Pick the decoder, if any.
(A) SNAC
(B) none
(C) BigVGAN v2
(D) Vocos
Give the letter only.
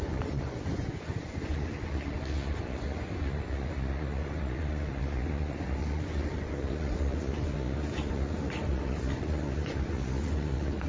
D